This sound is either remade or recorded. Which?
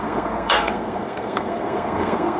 remade